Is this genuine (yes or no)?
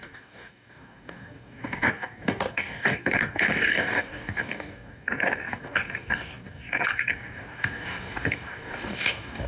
no